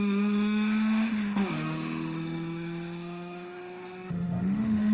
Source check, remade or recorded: remade